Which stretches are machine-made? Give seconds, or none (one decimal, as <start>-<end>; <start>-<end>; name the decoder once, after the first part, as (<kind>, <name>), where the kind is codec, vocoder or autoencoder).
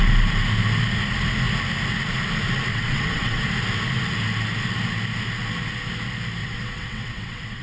2.7-3.5 (vocoder, WaveNeXt); 6.4-7.6